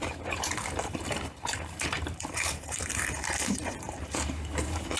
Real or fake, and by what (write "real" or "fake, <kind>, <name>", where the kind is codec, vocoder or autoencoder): fake, vocoder, BigVGAN v2